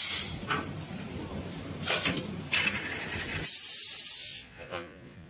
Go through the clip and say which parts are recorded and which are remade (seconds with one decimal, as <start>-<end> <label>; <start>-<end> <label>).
0.0-4.2 recorded; 4.2-5.3 remade